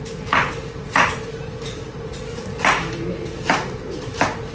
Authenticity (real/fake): real